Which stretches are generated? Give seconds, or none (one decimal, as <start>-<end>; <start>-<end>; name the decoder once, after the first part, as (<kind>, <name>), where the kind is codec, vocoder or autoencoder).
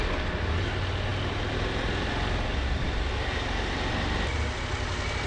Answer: none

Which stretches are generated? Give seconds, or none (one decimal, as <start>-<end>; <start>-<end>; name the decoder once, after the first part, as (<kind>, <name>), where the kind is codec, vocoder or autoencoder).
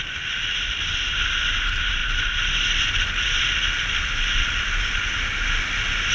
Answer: none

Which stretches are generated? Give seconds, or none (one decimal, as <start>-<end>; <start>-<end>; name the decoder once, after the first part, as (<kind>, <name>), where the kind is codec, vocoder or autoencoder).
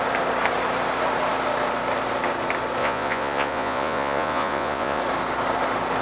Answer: 2.8-5.0 (vocoder, Vocos)